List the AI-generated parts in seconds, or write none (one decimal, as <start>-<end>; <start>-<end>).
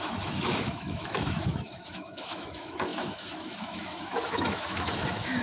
0.0-5.4